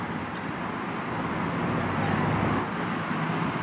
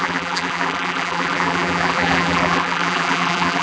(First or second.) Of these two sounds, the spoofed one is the second